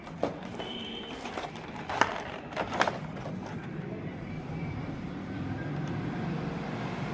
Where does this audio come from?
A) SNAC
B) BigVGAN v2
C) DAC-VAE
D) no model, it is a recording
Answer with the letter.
B